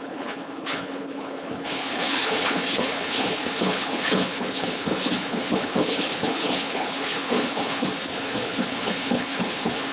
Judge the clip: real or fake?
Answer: fake